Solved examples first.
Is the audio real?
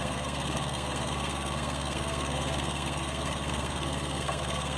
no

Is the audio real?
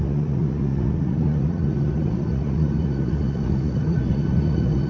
no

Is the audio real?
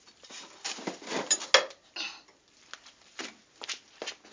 yes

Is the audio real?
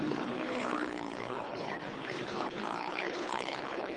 no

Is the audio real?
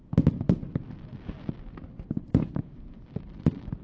yes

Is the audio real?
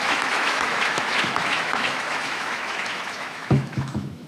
no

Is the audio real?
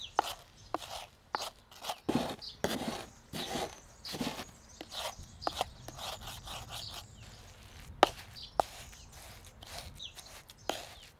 yes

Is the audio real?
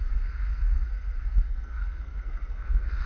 no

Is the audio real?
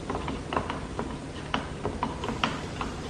yes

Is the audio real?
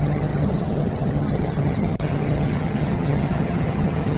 no